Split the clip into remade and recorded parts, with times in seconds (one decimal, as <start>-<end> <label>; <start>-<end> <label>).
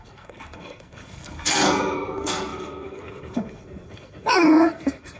0.0-5.2 remade